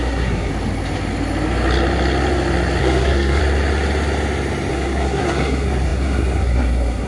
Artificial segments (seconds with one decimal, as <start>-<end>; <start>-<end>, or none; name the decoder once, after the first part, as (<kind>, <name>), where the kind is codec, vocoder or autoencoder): 0.0-0.5 (codec, SNAC); 2.8-3.4; 4.7-7.1